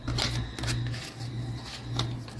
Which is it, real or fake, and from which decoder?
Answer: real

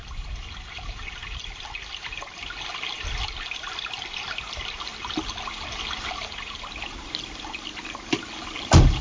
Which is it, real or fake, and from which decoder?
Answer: real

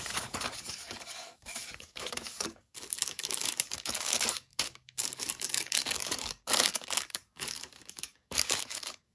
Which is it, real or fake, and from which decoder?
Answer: fake, codec, DAC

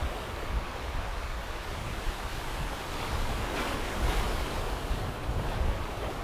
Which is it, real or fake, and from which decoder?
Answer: fake, codec, DAC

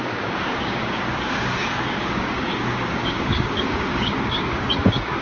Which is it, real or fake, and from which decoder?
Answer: fake, codec, DAC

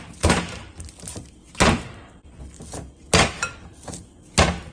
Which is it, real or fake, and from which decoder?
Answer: real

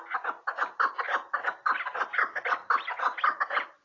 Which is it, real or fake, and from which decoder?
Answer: real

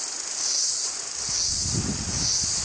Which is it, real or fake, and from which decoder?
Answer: real